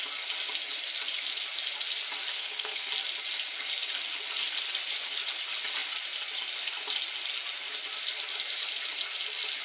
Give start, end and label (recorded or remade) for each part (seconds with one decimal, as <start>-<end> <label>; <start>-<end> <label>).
0.0-2.3 recorded; 2.3-2.9 remade; 2.9-9.6 recorded